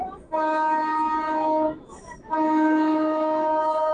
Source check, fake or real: fake